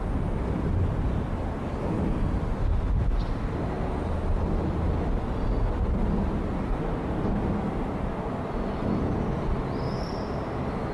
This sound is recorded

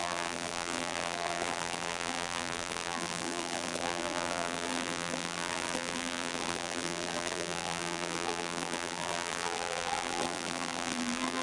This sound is remade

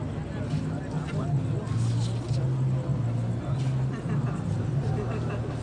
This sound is recorded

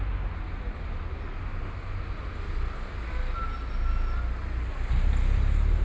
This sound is recorded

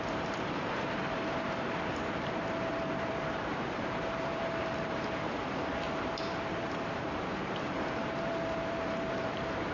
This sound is remade